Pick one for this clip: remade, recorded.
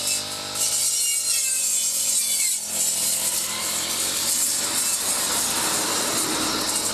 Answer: recorded